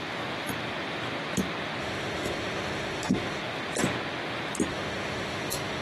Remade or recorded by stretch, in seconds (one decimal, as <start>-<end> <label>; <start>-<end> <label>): 0.0-1.8 recorded; 1.8-3.4 remade; 3.4-4.7 recorded; 4.7-5.8 remade